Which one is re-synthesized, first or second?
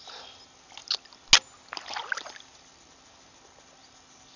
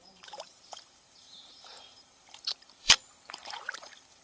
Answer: second